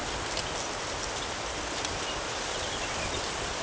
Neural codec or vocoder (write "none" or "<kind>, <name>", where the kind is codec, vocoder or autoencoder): none